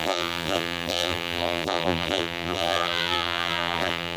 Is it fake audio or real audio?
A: fake